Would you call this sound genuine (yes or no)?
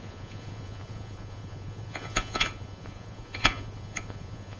no